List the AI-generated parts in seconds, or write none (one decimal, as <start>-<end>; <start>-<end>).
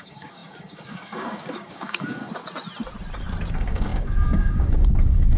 0.0-2.4; 3.5-5.4